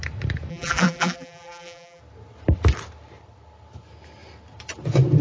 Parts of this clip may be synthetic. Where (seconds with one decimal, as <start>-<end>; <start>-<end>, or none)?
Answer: 0.5-2.0